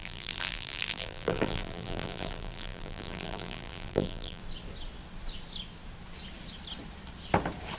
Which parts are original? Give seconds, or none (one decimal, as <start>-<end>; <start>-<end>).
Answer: 4.4-7.8

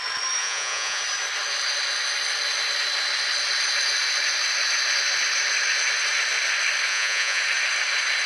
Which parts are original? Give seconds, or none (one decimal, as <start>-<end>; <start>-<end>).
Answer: 0.0-0.4; 1.0-6.9; 7.4-8.3